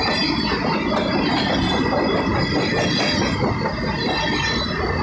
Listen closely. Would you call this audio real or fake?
real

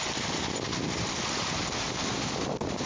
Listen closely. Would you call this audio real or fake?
real